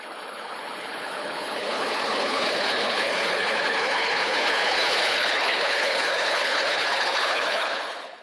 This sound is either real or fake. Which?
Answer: fake